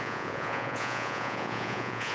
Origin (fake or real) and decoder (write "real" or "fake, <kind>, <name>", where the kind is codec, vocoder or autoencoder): fake, vocoder, Vocos